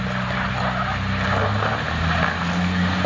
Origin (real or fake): real